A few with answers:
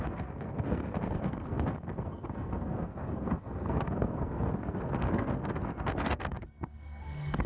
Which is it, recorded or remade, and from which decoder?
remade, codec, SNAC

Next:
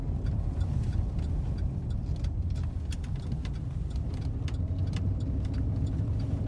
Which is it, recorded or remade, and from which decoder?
remade, vocoder, BigVGAN v2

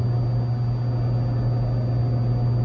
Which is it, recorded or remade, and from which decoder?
recorded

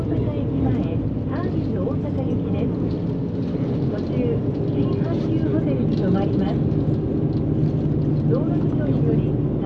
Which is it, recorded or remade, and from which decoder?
recorded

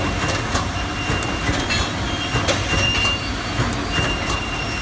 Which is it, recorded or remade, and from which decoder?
remade, vocoder, BigVGAN v2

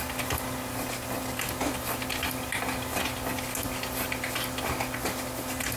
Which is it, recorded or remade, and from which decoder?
recorded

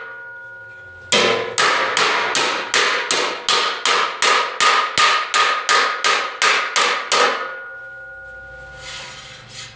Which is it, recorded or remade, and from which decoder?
recorded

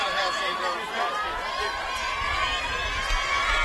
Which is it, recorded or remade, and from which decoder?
recorded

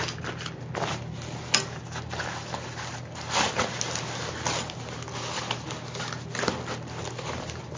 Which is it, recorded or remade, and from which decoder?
recorded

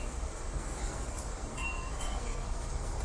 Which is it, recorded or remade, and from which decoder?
remade, codec, SNAC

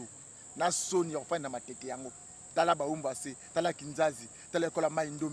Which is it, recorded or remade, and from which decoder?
recorded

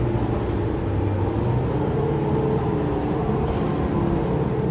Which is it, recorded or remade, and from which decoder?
recorded